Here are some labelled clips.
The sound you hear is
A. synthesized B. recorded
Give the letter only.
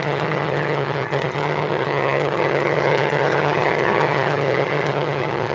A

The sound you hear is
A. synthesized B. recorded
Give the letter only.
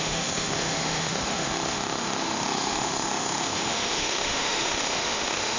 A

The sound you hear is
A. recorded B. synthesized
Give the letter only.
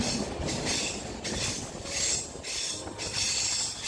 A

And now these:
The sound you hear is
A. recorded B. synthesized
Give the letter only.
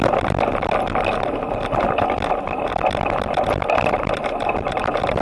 A